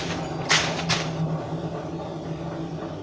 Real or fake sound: real